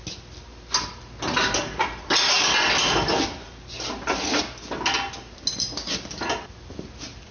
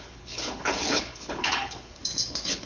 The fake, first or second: second